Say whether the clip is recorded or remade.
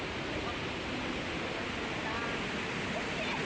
recorded